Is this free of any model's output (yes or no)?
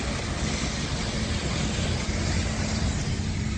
yes